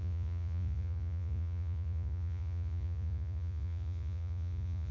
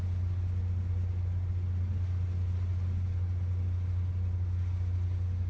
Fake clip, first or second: first